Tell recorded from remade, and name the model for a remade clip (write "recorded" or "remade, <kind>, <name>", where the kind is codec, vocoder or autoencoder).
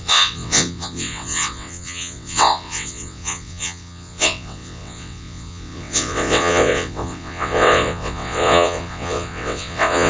remade, vocoder, WaveNeXt